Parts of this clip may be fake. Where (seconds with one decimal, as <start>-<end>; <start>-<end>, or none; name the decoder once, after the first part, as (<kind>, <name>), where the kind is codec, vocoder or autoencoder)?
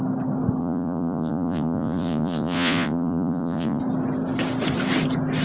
0.6-3.8 (vocoder, Vocos)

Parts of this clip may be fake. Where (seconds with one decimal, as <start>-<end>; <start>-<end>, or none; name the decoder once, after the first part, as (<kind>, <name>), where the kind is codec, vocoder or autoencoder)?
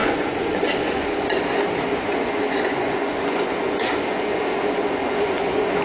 0.0-1.5 (vocoder, Vocos); 1.9-5.8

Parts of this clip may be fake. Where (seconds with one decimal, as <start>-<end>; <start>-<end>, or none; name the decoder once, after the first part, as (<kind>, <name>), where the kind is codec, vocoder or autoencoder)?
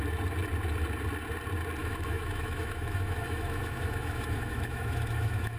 1.8-5.6 (autoencoder, DAC-VAE)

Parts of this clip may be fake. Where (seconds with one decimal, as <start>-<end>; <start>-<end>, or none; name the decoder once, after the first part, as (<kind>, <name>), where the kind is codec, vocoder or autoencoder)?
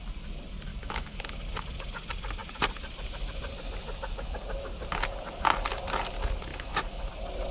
0.7-1.4 (autoencoder, DAC-VAE); 6.5-7.1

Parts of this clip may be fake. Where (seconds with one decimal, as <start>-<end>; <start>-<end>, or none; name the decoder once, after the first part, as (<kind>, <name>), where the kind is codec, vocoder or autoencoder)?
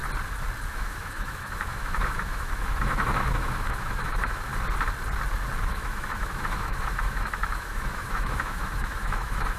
0.7-4.5 (autoencoder, DAC-VAE); 5.6-9.6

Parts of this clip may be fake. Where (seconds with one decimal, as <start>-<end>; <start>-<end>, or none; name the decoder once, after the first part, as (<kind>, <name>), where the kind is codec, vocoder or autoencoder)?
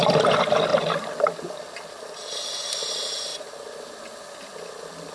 none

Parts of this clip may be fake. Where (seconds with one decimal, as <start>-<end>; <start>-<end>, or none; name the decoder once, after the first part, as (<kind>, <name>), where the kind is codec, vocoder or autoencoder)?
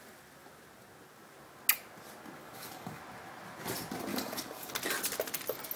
2.4-3.0 (codec, DAC); 4.1-4.7